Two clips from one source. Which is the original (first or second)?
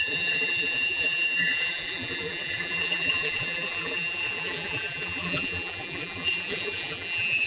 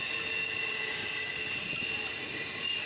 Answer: second